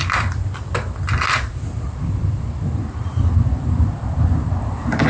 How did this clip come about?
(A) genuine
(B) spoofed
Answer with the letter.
B